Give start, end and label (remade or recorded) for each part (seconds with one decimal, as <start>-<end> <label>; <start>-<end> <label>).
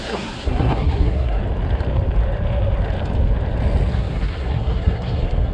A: 0.0-1.4 remade; 1.4-3.9 recorded; 3.9-5.5 remade